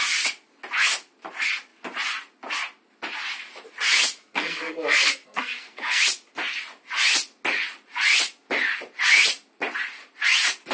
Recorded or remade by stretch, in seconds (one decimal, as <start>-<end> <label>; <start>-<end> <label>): 0.0-4.2 recorded; 4.2-6.0 remade; 6.0-10.7 recorded